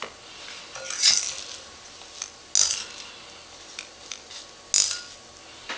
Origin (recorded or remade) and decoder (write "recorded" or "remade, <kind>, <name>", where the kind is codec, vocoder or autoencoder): recorded